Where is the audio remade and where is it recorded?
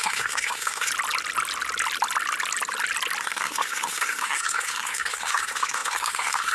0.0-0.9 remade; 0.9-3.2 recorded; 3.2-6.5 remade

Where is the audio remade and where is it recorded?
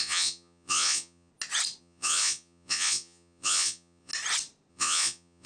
0.0-1.3 remade; 1.3-1.8 recorded; 1.8-4.1 remade; 4.1-4.7 recorded; 4.7-5.5 remade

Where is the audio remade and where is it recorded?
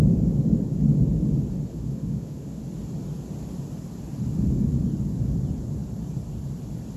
0.0-1.7 recorded; 1.7-2.6 remade; 2.6-7.0 recorded